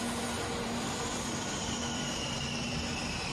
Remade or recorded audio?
remade